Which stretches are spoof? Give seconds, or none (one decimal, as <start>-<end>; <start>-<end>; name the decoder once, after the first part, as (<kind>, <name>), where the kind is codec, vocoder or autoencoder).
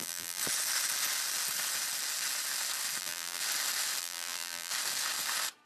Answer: 0.0-0.4 (vocoder, BigVGAN v2); 3.0-3.4; 4.0-4.7